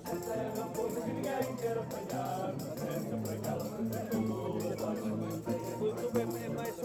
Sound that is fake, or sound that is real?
fake